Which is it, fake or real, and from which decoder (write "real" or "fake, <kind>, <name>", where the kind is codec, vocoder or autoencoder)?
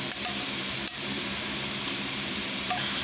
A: fake, vocoder, BigVGAN v2